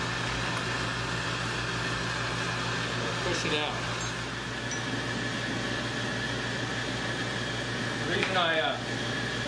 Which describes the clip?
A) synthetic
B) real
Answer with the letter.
B